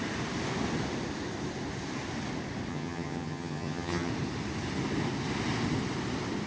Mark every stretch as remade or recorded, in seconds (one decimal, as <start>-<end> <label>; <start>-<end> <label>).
0.0-2.7 recorded; 2.7-4.1 remade; 4.1-6.5 recorded